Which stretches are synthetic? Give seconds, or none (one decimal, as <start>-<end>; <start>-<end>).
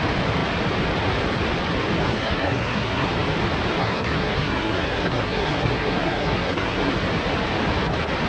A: 2.0-3.1; 3.8-6.9